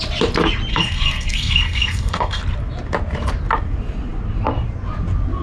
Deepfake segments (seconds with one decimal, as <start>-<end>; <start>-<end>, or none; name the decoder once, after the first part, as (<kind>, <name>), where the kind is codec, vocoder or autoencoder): 0.7-2.4 (codec, SNAC)